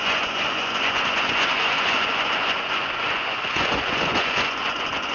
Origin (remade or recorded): remade